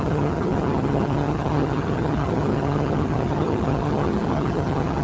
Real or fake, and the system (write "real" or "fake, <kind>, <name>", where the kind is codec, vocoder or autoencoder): fake, vocoder, HiFi-GAN